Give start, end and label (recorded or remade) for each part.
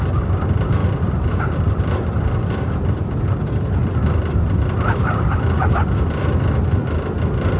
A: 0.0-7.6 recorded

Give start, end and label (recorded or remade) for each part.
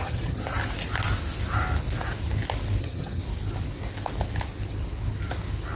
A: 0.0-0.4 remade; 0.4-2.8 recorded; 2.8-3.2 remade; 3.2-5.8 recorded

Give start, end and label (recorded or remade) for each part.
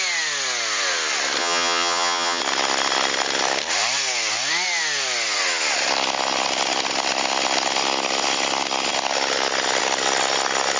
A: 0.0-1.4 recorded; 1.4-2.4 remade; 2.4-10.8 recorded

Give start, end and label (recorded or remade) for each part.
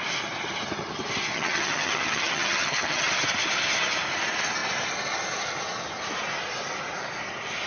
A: 0.0-1.3 recorded; 1.3-3.1 remade; 3.1-7.7 recorded